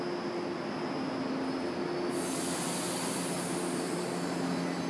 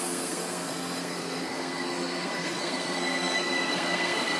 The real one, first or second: first